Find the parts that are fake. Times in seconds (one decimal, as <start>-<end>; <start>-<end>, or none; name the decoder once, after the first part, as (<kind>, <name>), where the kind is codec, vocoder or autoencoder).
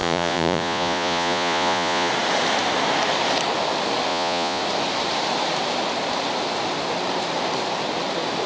0.0-2.1 (vocoder, Vocos); 4.1-4.6